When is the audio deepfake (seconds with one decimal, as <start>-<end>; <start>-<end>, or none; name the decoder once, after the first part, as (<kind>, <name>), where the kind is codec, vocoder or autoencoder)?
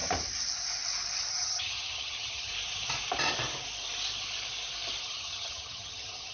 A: 1.3-2.5 (vocoder, HiFi-GAN); 5.0-6.3